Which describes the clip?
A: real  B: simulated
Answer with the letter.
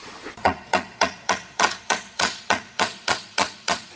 B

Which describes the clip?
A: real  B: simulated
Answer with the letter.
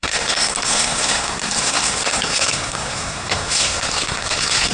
B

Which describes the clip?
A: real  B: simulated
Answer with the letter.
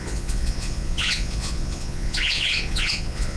B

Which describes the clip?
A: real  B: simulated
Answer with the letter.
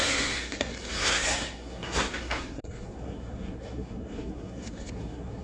B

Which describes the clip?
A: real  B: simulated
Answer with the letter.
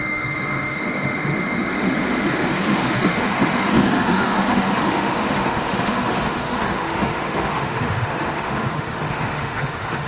B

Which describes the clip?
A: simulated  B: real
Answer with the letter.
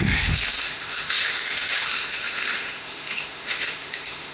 A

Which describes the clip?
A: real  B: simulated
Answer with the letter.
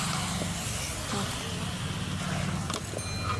A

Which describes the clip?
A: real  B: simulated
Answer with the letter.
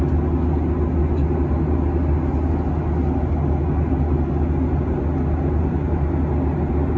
A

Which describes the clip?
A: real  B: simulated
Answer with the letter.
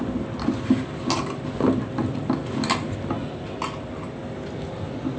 A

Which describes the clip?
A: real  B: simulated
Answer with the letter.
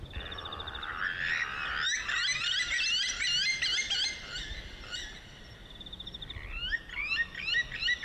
A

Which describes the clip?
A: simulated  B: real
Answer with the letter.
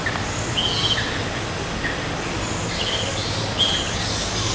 B